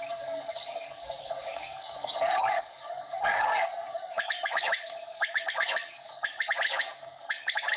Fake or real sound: fake